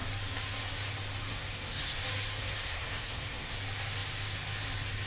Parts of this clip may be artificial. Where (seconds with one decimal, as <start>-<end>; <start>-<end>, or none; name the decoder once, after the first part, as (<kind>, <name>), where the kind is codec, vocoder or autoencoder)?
1.3-2.0 (codec, SNAC); 2.4-3.6